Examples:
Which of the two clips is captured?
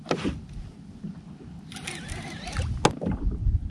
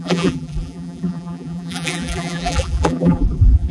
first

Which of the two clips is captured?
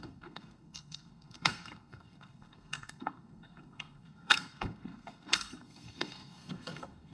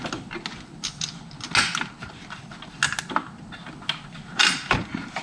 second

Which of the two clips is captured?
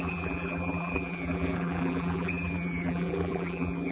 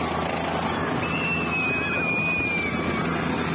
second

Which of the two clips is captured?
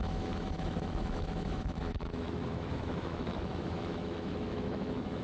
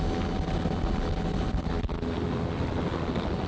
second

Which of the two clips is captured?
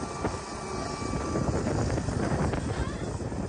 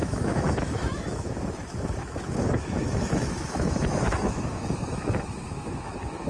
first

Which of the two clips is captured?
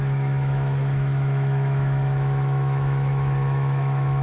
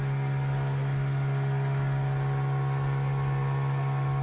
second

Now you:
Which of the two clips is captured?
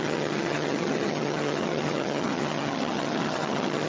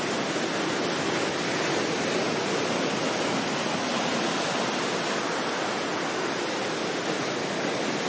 second